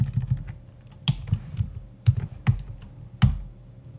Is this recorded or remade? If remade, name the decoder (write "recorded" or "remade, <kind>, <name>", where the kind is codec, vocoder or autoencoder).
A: recorded